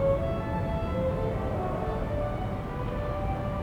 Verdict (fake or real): real